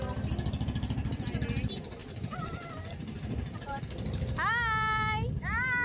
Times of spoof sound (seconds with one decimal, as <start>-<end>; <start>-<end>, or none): 2.0-3.8